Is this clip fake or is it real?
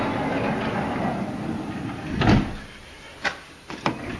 real